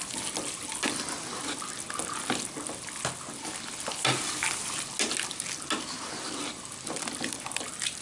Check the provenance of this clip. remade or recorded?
recorded